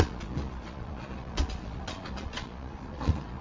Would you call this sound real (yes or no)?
no